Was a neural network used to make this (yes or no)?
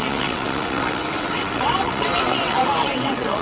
yes